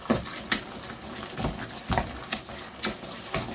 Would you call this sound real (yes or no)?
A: yes